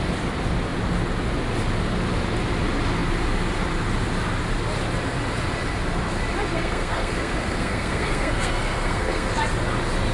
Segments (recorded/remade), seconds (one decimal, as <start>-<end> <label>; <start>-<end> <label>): 0.0-6.5 recorded; 6.5-9.3 remade; 9.3-10.1 recorded